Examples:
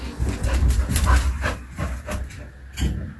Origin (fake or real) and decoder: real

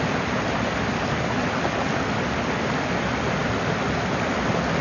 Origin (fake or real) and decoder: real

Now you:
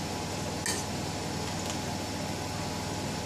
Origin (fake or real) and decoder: real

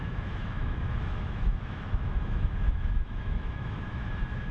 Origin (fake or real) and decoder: fake, autoencoder, DAC-VAE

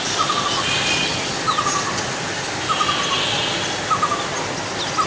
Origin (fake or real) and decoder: real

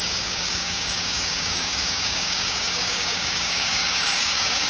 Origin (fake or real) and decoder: fake, codec, DAC